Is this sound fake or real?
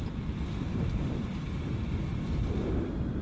real